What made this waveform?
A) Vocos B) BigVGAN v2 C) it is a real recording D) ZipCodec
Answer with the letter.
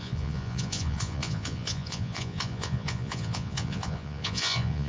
A